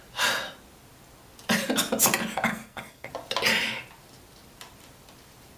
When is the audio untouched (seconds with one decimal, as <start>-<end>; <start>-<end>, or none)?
0.0-2.5; 3.1-5.6